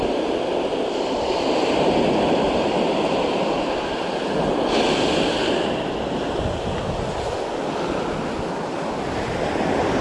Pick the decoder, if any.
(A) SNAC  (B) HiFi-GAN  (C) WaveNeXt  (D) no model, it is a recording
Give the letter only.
D